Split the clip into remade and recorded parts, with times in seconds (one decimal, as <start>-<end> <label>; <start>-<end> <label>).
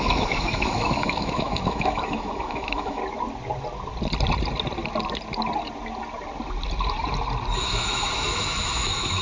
0.0-3.0 remade; 3.0-7.6 recorded; 7.6-9.2 remade